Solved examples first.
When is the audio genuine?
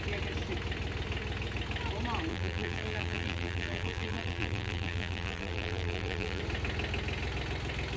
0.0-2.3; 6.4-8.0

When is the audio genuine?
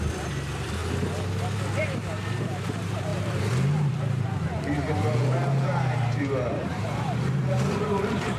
0.8-1.8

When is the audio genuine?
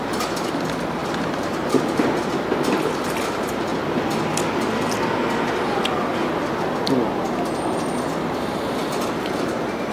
0.0-1.0; 2.2-9.9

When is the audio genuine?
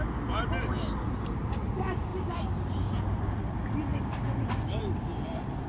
0.0-2.1; 3.3-5.7